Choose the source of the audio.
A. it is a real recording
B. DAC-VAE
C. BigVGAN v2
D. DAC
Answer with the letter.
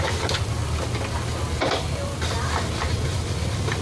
A